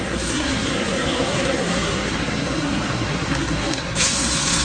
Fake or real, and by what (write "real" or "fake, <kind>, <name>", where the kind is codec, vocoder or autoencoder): fake, codec, SNAC